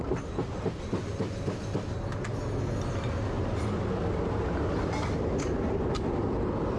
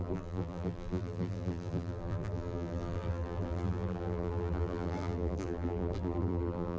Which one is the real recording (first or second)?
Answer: first